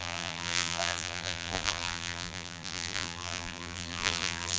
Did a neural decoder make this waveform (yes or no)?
yes